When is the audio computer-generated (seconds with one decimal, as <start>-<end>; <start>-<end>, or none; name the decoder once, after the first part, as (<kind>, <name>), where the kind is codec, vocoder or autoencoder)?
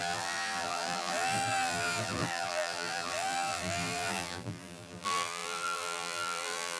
0.0-6.8 (vocoder, BigVGAN v2)